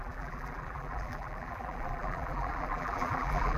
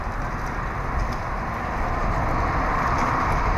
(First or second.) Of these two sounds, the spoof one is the first